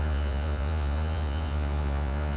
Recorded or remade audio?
remade